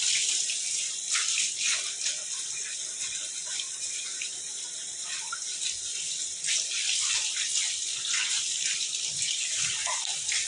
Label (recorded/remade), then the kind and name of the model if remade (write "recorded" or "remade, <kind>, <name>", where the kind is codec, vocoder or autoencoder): recorded